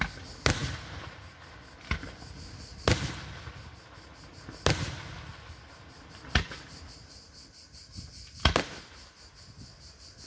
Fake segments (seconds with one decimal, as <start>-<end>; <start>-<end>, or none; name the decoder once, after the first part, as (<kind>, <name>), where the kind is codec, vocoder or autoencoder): none